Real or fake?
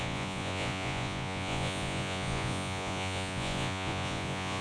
fake